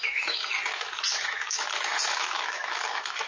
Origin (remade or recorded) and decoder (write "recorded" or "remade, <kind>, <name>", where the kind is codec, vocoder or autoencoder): remade, autoencoder, DAC-VAE